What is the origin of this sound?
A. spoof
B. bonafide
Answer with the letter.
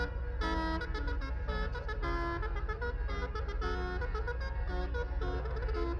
B